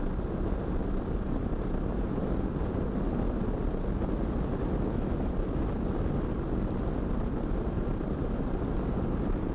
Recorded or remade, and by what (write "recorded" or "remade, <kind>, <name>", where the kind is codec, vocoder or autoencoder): recorded